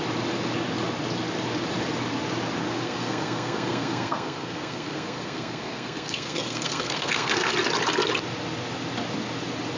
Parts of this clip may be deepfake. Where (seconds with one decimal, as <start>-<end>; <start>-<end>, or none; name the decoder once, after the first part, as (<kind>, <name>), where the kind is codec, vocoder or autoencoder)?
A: 2.6-7.5 (codec, SNAC)